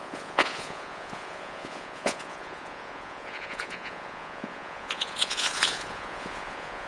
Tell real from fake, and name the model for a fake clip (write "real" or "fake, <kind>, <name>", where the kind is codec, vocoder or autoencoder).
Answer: fake, vocoder, Vocos